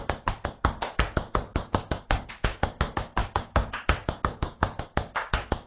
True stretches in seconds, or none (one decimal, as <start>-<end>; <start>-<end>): 0.0-1.5; 2.3-3.2; 5.3-5.7